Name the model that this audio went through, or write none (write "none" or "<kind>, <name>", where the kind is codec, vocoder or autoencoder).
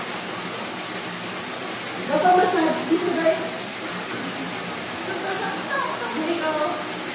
none